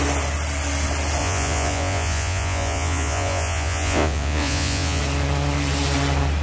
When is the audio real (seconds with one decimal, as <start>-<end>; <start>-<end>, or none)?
0.0-1.2; 5.0-6.4

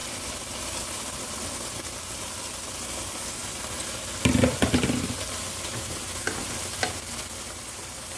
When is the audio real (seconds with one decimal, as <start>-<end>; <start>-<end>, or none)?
0.0-8.2

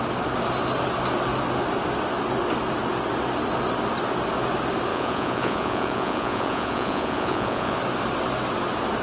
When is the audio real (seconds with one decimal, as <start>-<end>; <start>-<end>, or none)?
0.0-4.9; 7.8-9.0

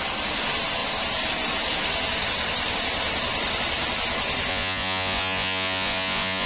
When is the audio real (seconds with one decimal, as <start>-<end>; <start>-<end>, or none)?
0.0-4.5

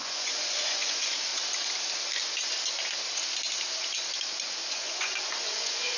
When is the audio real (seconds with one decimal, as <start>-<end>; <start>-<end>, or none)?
1.3-4.7

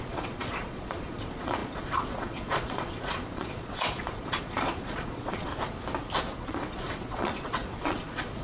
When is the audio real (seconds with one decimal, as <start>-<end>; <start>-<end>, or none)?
5.5-6.4

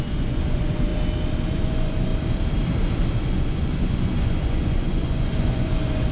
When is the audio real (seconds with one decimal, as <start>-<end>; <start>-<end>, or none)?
0.9-1.5; 2.1-3.3

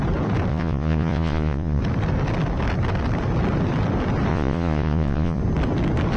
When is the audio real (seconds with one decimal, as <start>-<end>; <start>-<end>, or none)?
0.0-0.5; 1.8-4.3; 5.4-6.2